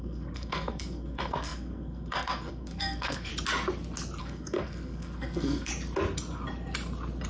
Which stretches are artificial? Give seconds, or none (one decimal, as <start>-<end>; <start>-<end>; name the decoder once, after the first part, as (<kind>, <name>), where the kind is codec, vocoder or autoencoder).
0.0-3.3 (codec, SNAC); 4.2-5.7